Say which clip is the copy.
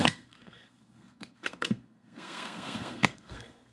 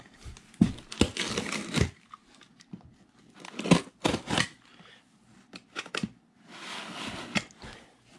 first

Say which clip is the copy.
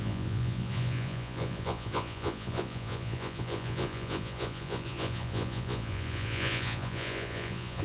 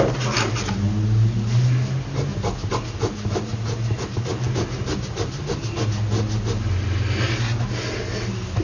first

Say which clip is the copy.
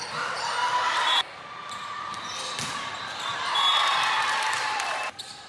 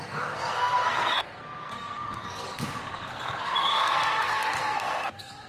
second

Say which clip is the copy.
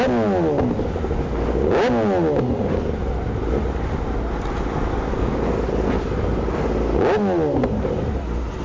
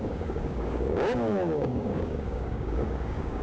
second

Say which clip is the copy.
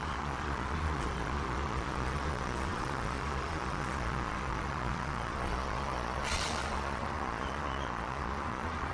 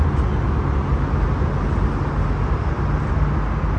first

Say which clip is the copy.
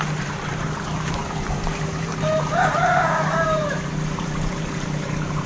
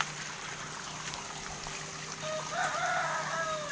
first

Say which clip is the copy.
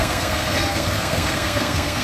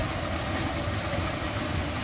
first